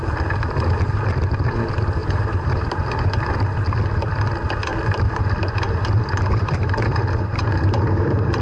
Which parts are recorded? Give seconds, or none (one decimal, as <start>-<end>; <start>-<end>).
0.0-2.0; 3.1-4.7